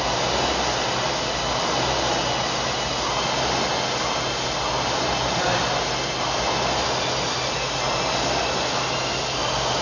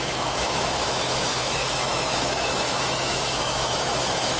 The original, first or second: first